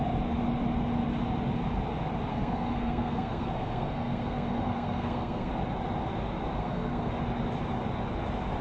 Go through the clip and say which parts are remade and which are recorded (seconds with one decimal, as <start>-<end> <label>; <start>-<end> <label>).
0.0-2.3 recorded; 2.3-5.5 remade; 5.5-6.6 recorded; 6.6-7.1 remade; 7.1-8.6 recorded

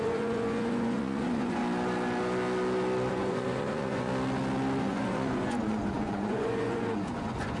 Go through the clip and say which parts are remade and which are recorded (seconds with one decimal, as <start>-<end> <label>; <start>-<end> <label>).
0.0-1.6 remade; 1.6-3.1 recorded; 3.1-4.1 remade; 4.1-4.8 recorded; 4.8-7.6 remade

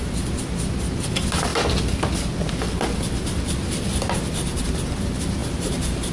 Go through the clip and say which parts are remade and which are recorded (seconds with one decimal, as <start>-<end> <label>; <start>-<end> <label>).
0.0-6.1 recorded

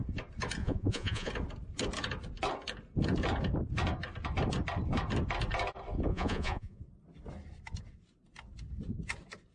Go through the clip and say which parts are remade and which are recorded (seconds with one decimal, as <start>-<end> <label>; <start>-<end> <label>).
0.0-0.6 recorded; 0.6-1.3 remade; 1.3-6.1 recorded; 6.1-6.8 remade; 6.8-9.5 recorded